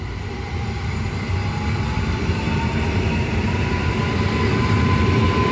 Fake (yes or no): no